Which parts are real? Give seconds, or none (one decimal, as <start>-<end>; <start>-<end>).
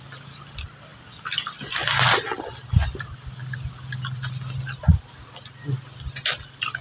0.0-6.8